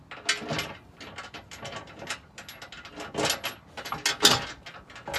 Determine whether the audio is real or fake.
real